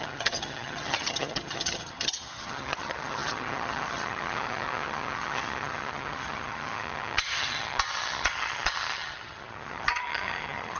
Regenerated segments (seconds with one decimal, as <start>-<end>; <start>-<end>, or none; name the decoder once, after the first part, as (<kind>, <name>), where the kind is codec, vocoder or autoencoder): 0.0-10.8 (vocoder, HiFi-GAN)